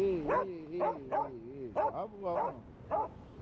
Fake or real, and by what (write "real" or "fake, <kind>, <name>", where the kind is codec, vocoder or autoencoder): real